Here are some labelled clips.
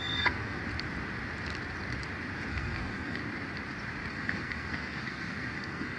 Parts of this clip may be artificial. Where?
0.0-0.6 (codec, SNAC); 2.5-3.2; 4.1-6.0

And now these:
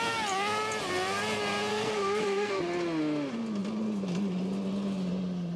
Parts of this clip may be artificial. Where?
1.7-2.6 (codec, SNAC)

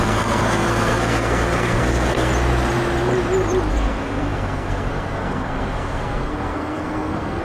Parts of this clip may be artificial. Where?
0.0-2.3 (codec, SNAC); 3.7-7.4

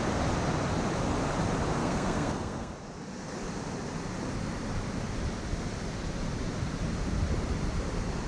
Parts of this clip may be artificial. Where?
1.8-2.7 (codec, SNAC)

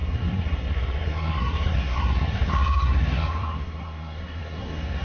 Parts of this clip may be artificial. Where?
0.0-5.0 (codec, SNAC)

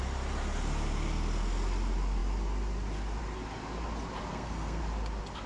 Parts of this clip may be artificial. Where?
4.3-4.8 (codec, SNAC)

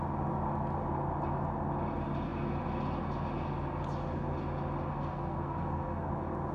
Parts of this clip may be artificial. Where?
4.9-6.1 (codec, SNAC)